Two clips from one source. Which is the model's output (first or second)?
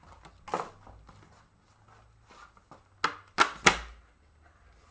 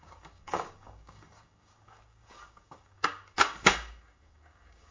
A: second